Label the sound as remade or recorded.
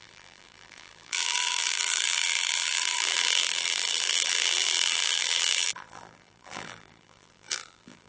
remade